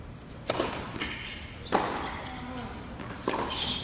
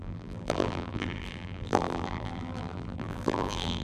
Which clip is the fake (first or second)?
second